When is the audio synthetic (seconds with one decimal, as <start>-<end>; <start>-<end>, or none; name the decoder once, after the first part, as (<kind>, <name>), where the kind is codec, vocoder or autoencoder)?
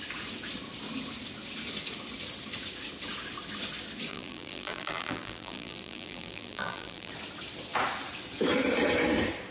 4.1-7.1 (vocoder, BigVGAN v2)